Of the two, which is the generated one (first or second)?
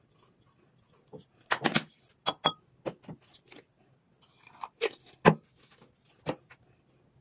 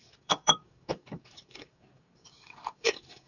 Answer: second